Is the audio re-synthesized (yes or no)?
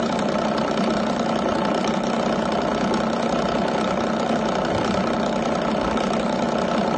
no